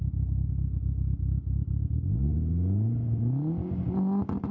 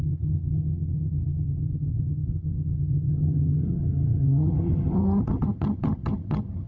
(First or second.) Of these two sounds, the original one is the first